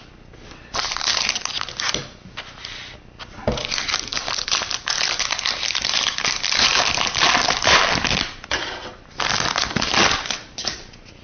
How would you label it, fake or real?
real